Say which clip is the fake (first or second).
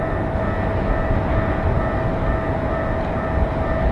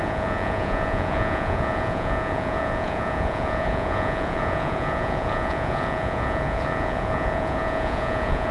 second